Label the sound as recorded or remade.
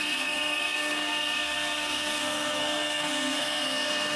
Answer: remade